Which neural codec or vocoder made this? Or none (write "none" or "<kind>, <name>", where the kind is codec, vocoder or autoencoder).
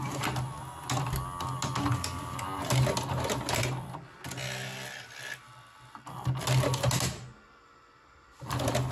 none